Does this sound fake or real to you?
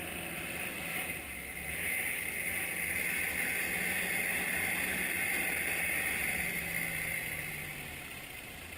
real